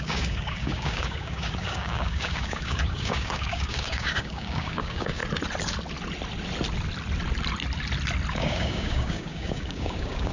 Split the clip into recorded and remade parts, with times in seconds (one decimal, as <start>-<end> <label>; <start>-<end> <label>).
0.0-5.2 remade; 5.2-8.3 recorded; 8.3-10.3 remade